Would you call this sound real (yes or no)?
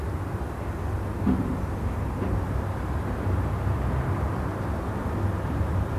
yes